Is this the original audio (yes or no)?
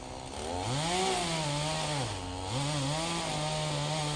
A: yes